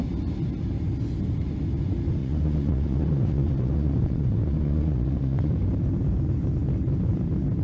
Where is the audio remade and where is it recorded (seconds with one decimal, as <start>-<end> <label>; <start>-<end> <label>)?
0.0-2.2 recorded; 2.2-5.5 remade; 5.5-7.6 recorded